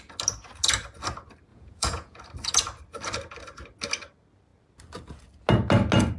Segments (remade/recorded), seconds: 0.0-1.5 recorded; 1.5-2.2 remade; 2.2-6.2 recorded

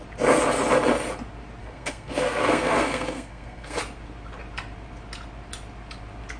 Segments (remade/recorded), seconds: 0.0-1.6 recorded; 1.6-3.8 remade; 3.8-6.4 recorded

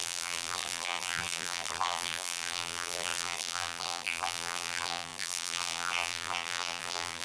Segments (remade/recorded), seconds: 0.0-7.2 remade